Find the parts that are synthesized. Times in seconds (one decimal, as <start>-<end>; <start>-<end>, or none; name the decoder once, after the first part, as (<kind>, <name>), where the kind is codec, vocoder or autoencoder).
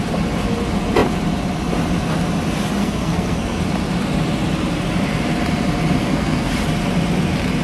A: 2.8-3.6 (codec, SNAC); 6.0-6.5